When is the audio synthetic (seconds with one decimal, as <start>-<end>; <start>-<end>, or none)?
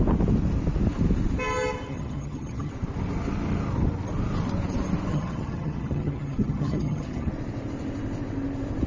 1.9-2.7; 5.1-7.3